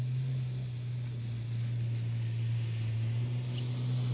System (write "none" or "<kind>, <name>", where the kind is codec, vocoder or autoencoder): none